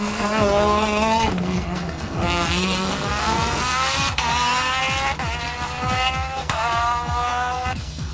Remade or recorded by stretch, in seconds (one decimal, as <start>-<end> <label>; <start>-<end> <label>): 0.0-4.8 remade; 4.8-5.4 recorded; 5.4-8.1 remade